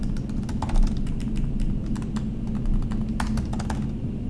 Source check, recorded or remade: recorded